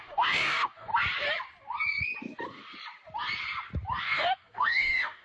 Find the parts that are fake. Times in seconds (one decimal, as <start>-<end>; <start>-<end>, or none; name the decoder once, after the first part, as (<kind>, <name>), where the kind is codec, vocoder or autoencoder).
0.0-0.9 (codec, DAC); 4.0-5.2

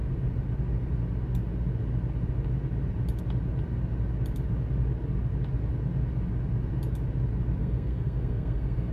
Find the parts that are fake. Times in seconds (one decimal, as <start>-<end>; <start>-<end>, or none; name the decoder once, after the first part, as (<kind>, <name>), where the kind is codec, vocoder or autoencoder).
7.6-8.9 (codec, SNAC)

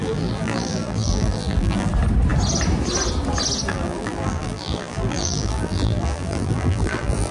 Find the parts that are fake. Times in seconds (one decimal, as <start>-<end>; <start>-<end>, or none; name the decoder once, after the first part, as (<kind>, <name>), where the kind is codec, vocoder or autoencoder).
0.0-1.9 (vocoder, BigVGAN v2); 3.7-7.3

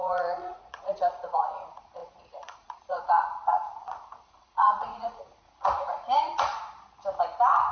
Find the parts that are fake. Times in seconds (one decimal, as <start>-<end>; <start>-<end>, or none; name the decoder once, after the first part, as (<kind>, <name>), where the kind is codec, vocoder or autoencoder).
0.0-6.5 (vocoder, Vocos)

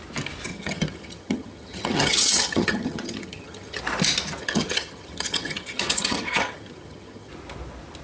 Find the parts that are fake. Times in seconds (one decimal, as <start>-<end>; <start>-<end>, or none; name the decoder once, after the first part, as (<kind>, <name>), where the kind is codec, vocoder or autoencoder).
0.5-3.8 (vocoder, HiFi-GAN); 4.4-7.3

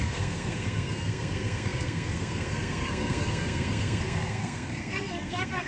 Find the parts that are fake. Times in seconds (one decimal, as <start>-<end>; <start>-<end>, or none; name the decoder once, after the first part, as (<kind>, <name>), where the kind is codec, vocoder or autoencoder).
0.0-5.7 (codec, SNAC)